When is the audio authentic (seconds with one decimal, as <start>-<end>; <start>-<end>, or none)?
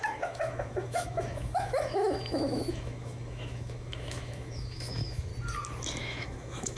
5.3-6.0